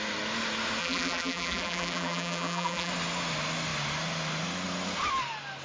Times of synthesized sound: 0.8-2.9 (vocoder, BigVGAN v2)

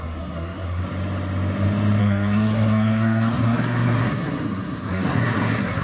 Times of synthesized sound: 0.0-0.8 (codec, SNAC); 2.0-5.8

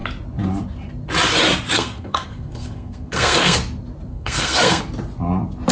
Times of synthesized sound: 1.7-3.6 (codec, SNAC); 4.1-4.8

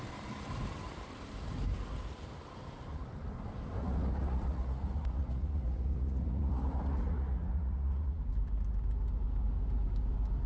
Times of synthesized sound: 3.8-8.2 (vocoder, Vocos)

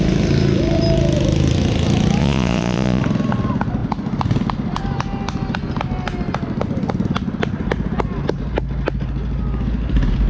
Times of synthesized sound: 2.2-3.0 (vocoder, Vocos)

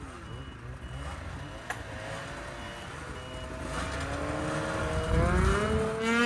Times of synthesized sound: none

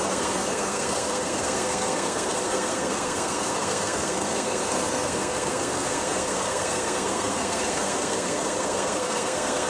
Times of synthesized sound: 0.0-9.7 (codec, SNAC)